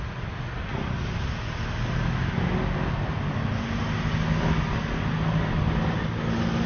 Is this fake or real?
real